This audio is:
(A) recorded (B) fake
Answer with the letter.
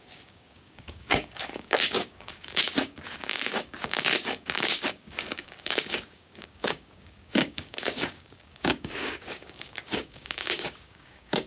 B